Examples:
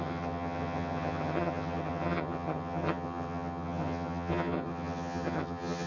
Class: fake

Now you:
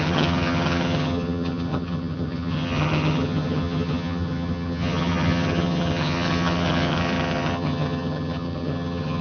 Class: fake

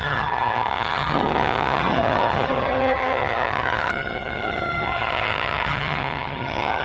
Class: fake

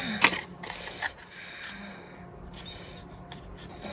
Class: real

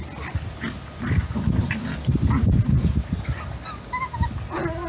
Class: real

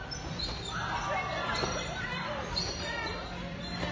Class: real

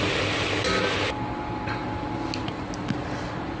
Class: real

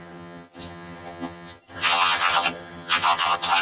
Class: fake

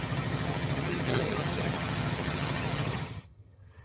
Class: fake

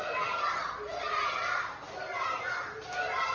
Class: real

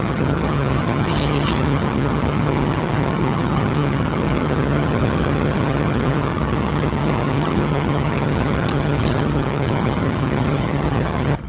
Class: fake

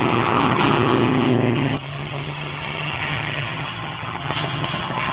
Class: fake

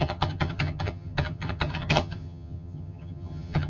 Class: fake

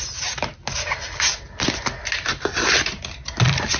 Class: real